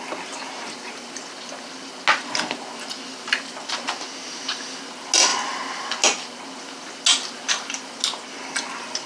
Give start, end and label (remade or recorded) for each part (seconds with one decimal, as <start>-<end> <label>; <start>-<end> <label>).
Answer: 0.0-9.1 recorded